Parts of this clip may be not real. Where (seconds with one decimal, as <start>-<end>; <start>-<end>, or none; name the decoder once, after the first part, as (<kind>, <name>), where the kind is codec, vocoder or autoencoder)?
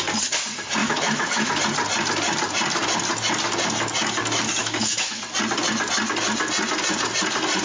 0.8-1.6 (autoencoder, DAC-VAE); 4.6-5.2